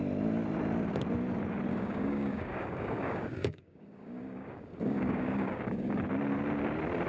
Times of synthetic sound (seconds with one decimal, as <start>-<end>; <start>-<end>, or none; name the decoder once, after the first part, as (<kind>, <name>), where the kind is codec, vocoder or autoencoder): 1.7-6.0 (codec, DAC)